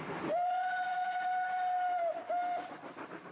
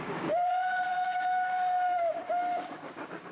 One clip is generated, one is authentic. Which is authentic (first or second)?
first